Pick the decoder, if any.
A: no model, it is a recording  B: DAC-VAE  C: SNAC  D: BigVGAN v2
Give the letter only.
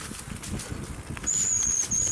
A